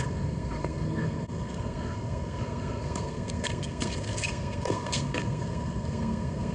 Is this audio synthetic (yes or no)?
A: yes